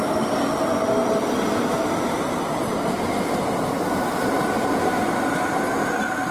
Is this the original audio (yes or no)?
yes